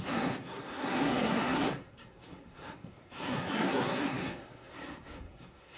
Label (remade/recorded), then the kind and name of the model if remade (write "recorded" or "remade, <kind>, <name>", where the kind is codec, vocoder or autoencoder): remade, codec, SNAC